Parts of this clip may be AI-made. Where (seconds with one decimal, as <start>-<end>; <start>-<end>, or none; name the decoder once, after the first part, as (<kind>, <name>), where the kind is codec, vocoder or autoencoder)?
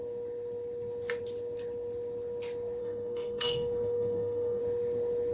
2.8-4.6 (codec, SNAC)